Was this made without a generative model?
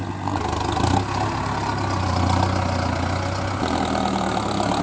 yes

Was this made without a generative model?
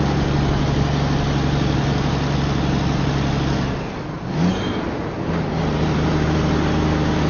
yes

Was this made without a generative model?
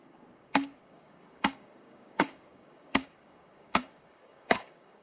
no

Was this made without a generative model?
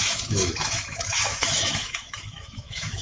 no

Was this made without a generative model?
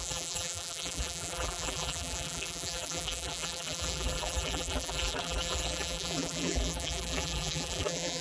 no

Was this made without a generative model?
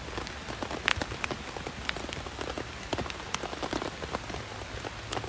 yes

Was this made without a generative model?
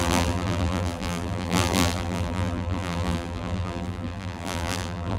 no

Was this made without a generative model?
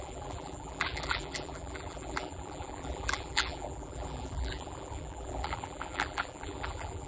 no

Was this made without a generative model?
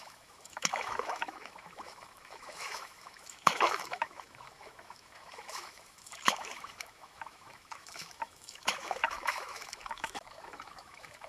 no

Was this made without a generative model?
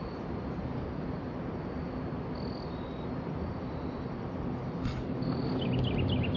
yes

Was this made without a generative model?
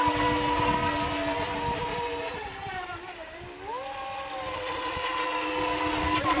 yes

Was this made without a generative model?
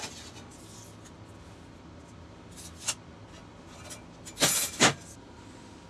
yes